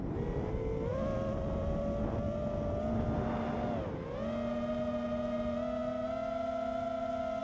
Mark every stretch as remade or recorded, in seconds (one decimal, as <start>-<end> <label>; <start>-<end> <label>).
0.0-7.4 recorded